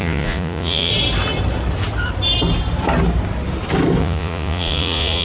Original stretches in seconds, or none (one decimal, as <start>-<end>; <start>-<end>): 0.9-4.0